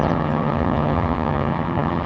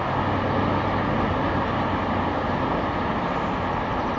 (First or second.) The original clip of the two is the second